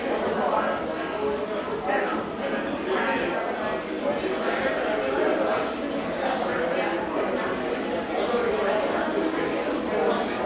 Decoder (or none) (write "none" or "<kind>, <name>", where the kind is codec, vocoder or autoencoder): none